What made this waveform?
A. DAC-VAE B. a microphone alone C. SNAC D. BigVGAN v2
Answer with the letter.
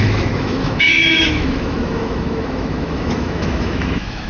A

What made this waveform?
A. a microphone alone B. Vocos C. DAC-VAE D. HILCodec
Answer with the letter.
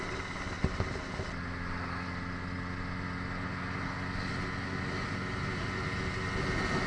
A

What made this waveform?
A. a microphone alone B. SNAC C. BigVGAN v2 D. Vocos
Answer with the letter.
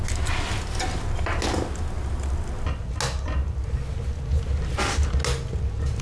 A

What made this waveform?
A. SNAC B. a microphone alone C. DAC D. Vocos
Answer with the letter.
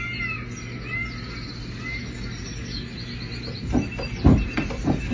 B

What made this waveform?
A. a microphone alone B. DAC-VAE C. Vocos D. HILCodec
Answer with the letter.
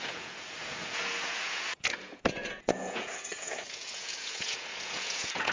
C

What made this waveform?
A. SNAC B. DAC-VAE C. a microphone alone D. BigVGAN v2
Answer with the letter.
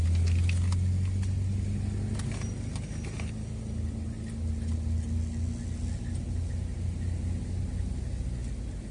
C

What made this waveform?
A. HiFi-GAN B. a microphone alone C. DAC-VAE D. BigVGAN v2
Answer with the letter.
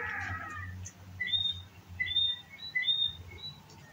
B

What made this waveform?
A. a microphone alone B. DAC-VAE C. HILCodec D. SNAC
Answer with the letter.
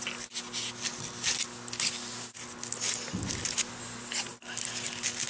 A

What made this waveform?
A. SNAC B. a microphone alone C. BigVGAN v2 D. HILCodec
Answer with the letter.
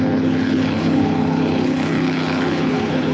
D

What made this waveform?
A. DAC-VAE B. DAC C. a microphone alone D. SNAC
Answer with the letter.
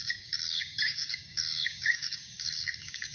B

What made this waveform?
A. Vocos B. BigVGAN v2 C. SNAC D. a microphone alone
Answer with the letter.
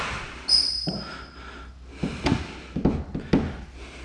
D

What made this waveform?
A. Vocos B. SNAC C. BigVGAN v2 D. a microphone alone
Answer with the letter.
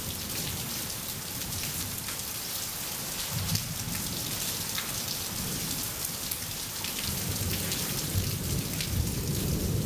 D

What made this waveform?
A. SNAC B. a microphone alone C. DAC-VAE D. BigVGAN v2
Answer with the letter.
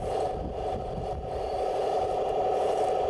B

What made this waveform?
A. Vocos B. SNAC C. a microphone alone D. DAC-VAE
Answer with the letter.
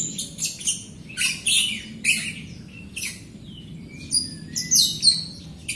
C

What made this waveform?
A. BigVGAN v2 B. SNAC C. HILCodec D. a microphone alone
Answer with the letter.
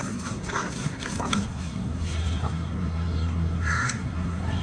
B